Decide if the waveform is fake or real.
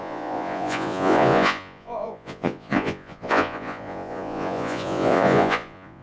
fake